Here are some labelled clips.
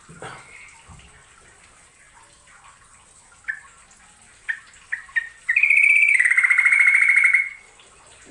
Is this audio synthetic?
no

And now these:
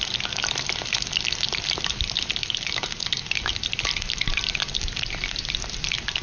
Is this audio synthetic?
no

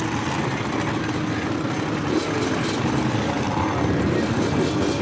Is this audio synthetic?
no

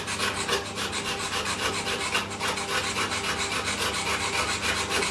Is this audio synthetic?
no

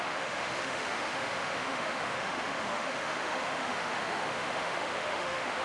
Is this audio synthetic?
yes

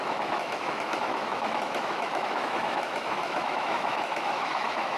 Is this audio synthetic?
yes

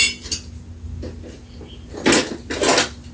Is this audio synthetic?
no